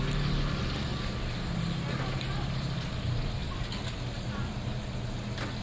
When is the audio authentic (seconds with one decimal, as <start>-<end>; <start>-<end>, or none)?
0.0-5.6

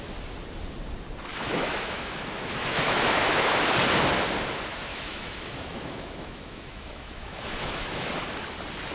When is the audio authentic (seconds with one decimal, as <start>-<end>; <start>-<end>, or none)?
0.0-1.3; 3.5-4.9; 8.1-8.9